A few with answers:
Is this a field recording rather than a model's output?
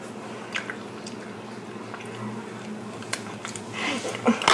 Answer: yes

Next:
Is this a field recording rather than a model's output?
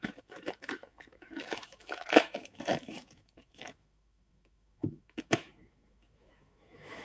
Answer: no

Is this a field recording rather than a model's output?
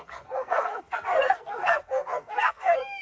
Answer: no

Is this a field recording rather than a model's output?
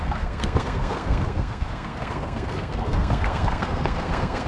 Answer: no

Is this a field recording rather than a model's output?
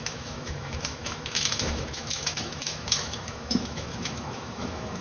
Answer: no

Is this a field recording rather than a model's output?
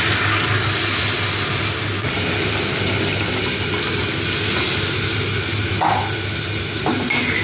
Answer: yes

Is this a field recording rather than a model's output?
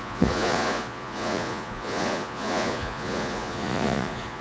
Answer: no